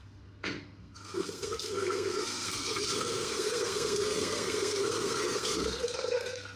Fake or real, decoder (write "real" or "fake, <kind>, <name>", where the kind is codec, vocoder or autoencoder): fake, codec, SNAC